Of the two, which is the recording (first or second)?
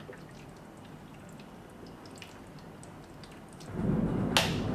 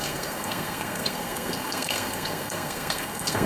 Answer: first